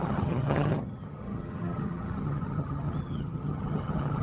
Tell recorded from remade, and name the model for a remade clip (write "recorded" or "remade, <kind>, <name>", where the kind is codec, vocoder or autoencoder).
remade, vocoder, HiFi-GAN